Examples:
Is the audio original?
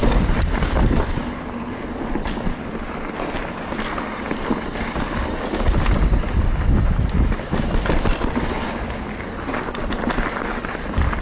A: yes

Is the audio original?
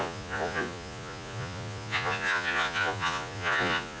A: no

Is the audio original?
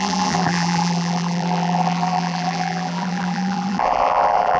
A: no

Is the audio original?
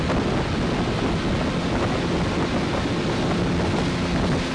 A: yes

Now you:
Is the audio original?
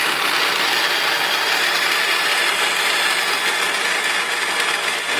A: yes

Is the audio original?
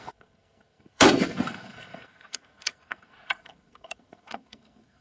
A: no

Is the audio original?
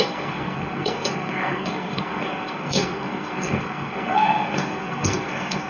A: no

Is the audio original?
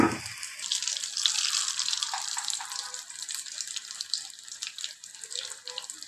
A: no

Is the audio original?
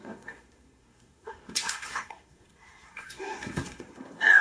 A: no